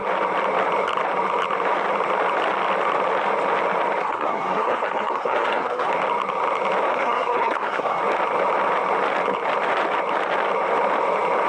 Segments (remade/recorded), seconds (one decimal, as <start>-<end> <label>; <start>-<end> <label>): 0.0-4.0 recorded; 4.0-5.9 remade; 5.9-6.9 recorded; 6.9-8.0 remade; 8.0-11.5 recorded